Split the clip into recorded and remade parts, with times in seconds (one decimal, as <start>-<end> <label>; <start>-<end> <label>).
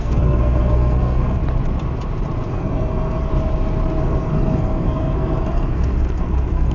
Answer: 0.0-1.4 remade; 1.4-2.5 recorded; 2.5-3.3 remade; 3.3-4.0 recorded; 4.0-6.7 remade